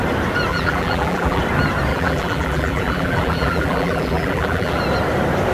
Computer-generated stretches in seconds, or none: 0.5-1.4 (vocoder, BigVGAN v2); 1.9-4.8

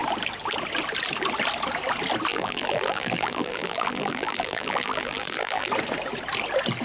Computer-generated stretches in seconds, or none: 2.3-5.7 (vocoder, BigVGAN v2)